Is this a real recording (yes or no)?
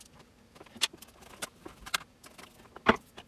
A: yes